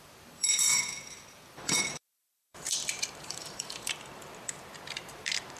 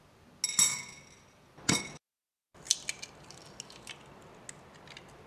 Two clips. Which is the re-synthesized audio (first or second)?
first